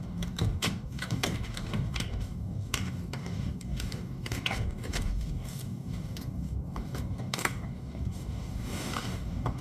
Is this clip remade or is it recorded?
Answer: remade